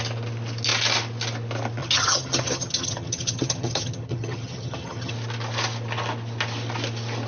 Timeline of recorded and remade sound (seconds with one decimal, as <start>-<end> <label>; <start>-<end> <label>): 0.0-1.8 recorded; 1.8-5.1 remade; 5.1-7.3 recorded